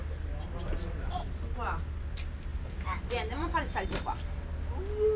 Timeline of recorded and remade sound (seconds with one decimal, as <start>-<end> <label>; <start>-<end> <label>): 0.0-5.2 recorded